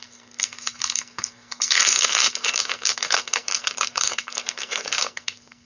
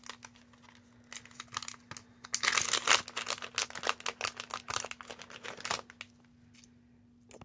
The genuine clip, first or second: second